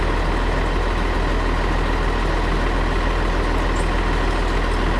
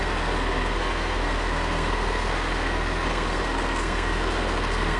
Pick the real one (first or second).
first